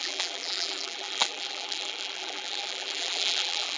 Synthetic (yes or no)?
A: yes